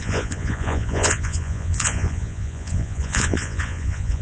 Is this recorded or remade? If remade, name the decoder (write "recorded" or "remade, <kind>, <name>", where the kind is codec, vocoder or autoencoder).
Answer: remade, vocoder, Vocos